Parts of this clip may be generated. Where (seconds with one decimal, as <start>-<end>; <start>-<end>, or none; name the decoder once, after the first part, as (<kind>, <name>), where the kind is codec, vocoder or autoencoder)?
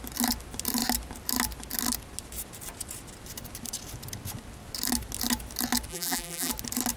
5.9-6.5 (vocoder, BigVGAN v2)